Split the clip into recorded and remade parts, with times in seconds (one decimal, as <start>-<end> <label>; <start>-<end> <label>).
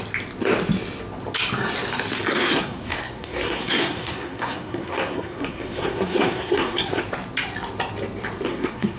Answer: 0.0-2.3 recorded; 2.3-7.0 remade; 7.0-8.5 recorded; 8.5-9.0 remade